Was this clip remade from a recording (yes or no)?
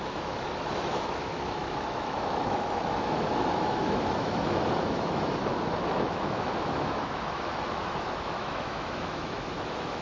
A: yes